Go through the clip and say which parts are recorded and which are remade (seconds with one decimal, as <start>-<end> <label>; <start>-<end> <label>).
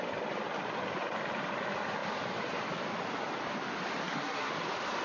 0.0-4.0 recorded; 4.0-4.5 remade; 4.5-5.0 recorded